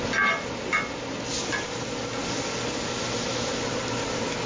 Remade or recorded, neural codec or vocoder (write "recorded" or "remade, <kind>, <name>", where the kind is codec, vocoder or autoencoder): recorded